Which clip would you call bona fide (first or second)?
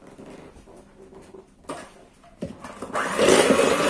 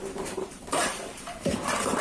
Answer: first